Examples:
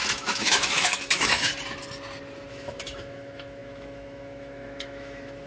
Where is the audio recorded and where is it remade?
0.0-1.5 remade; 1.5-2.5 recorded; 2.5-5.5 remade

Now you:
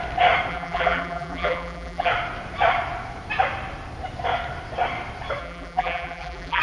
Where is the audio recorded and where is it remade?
0.0-0.5 recorded; 0.5-2.1 remade; 2.1-5.4 recorded; 5.4-6.6 remade

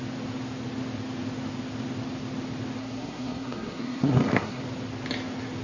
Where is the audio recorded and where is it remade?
0.0-2.8 recorded; 2.8-4.6 remade; 4.6-5.6 recorded

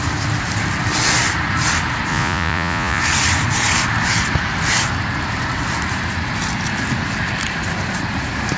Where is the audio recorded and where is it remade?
0.0-2.1 recorded; 2.1-3.0 remade; 3.0-8.6 recorded

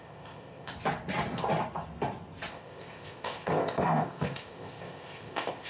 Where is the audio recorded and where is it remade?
0.0-0.7 remade; 0.7-2.5 recorded; 2.5-5.7 remade

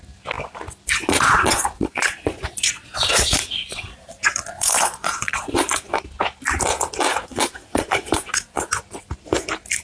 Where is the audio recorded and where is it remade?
0.0-1.0 recorded; 1.0-6.0 remade; 6.0-7.1 recorded; 7.1-8.7 remade; 8.7-9.8 recorded

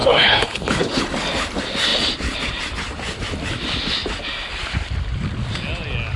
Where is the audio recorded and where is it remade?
0.0-1.0 remade; 1.0-6.2 recorded